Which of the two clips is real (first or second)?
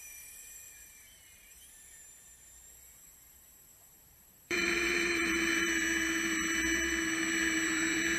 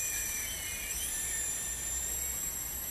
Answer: second